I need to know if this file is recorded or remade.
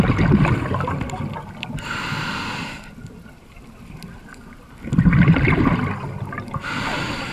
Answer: recorded